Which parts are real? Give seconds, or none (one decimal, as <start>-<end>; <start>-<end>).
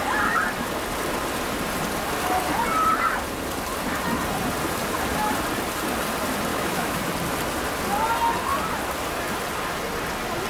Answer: 0.0-6.5; 7.1-10.5